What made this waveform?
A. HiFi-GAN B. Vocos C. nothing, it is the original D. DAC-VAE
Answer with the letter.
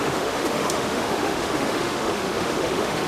D